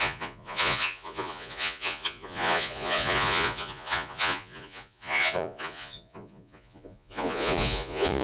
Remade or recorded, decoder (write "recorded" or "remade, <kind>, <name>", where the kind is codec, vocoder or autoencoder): remade, vocoder, Vocos